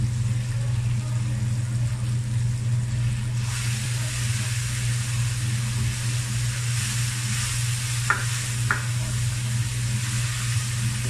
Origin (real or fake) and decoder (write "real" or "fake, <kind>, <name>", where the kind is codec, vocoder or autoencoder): real